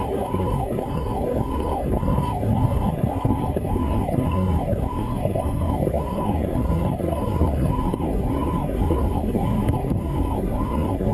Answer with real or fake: fake